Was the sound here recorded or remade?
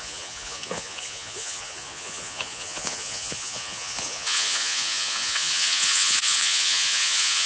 remade